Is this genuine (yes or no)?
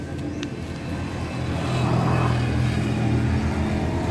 yes